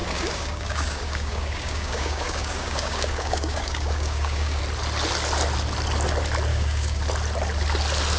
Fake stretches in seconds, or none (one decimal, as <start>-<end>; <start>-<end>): 0.0-4.6; 6.5-7.0